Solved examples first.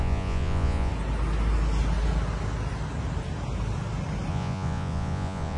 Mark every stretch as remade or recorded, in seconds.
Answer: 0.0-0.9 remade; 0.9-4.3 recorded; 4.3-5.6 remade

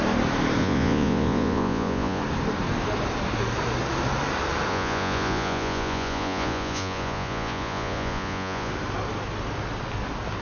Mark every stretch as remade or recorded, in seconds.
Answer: 0.0-0.6 recorded; 0.6-2.2 remade; 2.2-4.7 recorded; 4.7-8.7 remade; 8.7-10.4 recorded

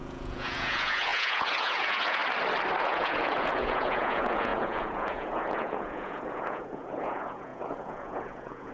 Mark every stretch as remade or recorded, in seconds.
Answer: 0.0-2.2 remade; 2.2-2.8 recorded; 2.8-8.7 remade

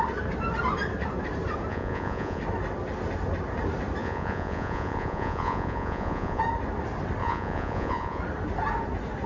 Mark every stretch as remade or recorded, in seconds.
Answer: 0.0-1.7 recorded; 1.7-2.4 remade; 2.4-4.0 recorded; 4.0-6.4 remade; 6.4-7.2 recorded; 7.2-8.2 remade; 8.2-9.3 recorded